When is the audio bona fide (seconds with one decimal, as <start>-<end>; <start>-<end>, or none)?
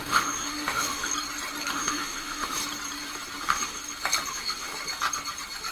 1.1-1.7; 2.6-3.4; 3.8-4.3; 4.7-5.7